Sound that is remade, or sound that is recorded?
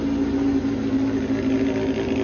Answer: recorded